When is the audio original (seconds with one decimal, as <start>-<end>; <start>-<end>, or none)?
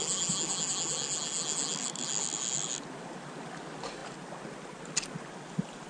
0.0-5.9